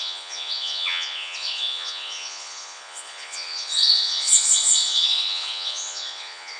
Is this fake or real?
fake